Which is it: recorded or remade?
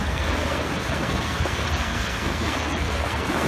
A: remade